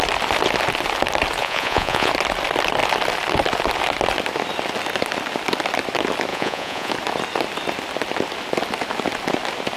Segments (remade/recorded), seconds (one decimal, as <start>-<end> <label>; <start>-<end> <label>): 0.0-1.4 recorded; 1.4-2.1 remade; 2.1-6.3 recorded; 6.3-6.9 remade; 6.9-9.8 recorded